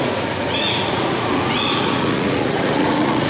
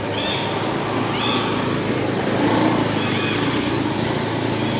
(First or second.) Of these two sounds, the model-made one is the first